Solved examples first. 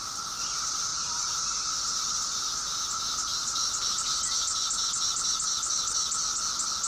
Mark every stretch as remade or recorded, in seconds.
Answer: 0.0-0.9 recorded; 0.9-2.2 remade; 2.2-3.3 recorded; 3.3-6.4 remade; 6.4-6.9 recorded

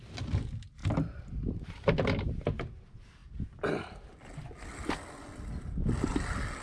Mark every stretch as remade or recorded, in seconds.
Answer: 0.0-6.6 recorded

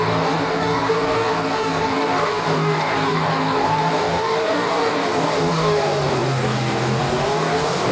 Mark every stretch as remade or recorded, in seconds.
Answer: 0.0-7.9 remade

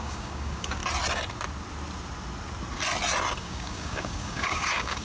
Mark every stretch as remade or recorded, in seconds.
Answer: 0.0-0.8 remade; 0.8-3.4 recorded; 3.4-5.0 remade

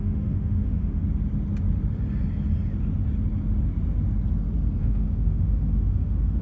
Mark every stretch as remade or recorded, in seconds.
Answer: 0.0-1.0 remade; 1.0-4.8 recorded; 4.8-6.4 remade